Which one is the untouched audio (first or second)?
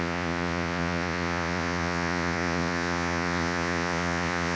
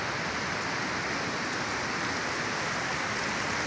second